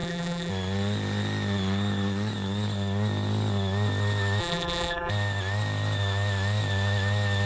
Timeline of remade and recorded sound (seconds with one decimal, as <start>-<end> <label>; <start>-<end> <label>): 0.0-0.5 remade; 0.5-4.4 recorded; 4.4-5.1 remade; 5.1-7.5 recorded